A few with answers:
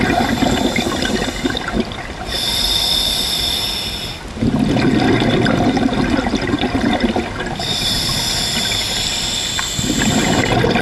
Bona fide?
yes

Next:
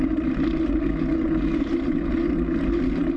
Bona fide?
yes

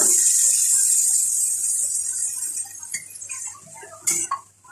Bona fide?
no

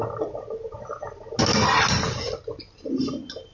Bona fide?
yes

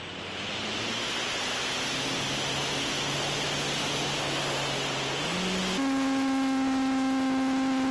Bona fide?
yes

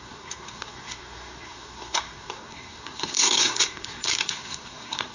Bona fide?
no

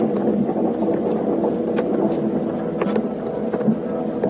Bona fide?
yes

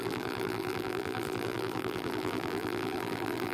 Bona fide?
no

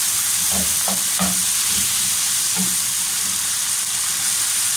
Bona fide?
no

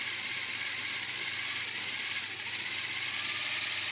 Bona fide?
yes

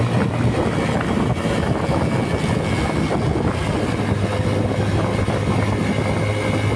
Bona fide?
yes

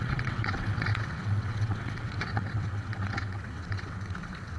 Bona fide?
no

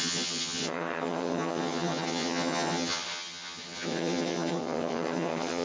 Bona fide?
no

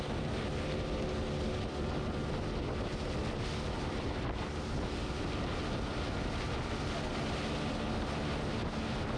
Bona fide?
yes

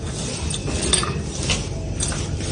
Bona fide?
yes